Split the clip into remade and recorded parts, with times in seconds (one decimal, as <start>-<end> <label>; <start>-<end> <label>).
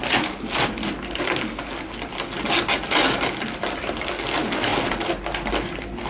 0.0-6.1 recorded